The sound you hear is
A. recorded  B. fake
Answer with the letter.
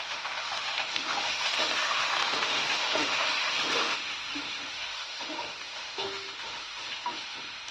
B